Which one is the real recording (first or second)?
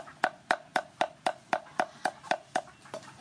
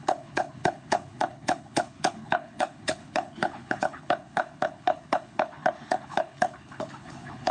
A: first